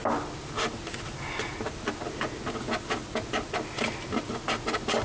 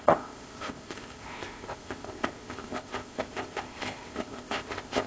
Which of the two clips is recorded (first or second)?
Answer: first